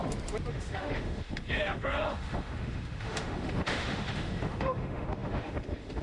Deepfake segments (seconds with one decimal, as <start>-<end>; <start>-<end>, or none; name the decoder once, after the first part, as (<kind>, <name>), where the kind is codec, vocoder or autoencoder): 0.5-6.0 (autoencoder, DAC-VAE)